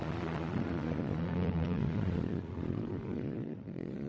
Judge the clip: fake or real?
fake